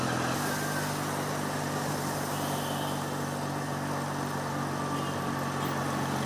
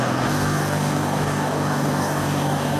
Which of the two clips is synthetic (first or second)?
second